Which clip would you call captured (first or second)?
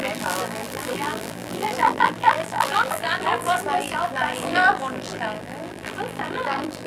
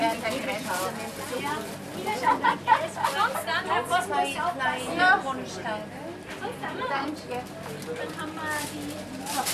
second